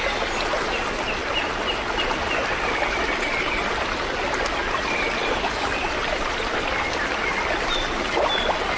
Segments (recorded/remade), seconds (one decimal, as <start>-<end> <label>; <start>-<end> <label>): 0.0-8.8 recorded